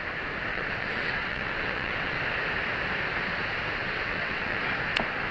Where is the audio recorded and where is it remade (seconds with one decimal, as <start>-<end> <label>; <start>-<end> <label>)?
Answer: 0.0-0.5 recorded; 0.5-2.2 remade; 2.2-3.8 recorded; 3.8-4.6 remade; 4.6-5.3 recorded